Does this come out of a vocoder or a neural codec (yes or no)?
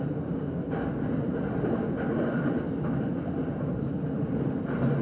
no